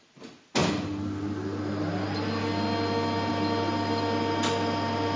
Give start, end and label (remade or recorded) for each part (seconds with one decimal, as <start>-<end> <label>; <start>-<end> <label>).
0.0-5.2 recorded